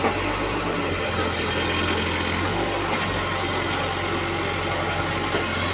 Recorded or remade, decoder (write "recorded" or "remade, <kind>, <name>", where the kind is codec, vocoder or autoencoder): recorded